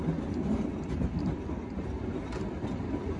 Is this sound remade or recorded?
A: recorded